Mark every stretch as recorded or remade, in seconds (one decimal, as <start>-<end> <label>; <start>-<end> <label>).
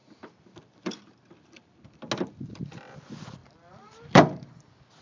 0.0-2.0 remade; 2.0-3.4 recorded; 3.4-4.5 remade; 4.5-5.0 recorded